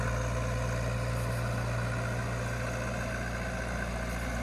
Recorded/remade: recorded